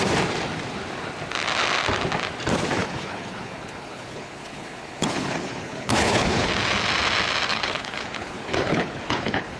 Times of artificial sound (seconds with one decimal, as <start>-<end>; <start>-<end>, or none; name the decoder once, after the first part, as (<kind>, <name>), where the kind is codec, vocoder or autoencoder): 2.8-6.5 (codec, HILCodec); 7.5-9.6